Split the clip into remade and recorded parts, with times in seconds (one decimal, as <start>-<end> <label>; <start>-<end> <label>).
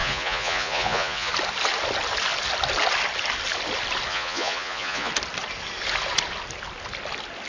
0.0-1.3 remade; 1.3-4.1 recorded; 4.1-5.1 remade; 5.1-7.5 recorded